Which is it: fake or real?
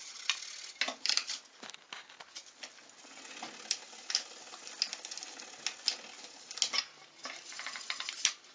real